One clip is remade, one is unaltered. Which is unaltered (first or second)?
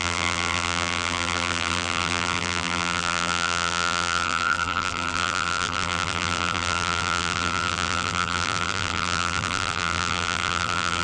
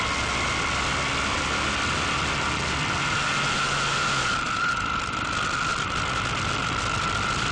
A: second